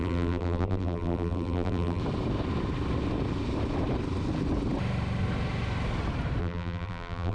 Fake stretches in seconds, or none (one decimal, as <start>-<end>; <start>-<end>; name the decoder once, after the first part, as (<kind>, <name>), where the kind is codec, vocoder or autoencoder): 0.0-2.0 (vocoder, BigVGAN v2); 6.4-7.3